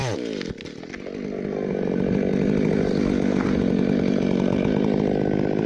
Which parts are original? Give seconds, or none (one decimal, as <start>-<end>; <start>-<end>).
0.0-3.3; 4.8-5.7